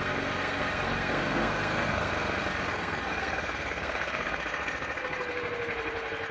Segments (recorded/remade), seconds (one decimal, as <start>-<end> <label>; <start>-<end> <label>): 0.0-2.1 remade; 2.1-2.7 recorded; 2.7-6.3 remade